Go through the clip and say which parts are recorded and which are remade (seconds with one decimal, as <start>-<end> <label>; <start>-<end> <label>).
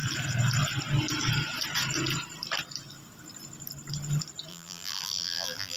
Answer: 0.0-4.5 recorded; 4.5-5.8 remade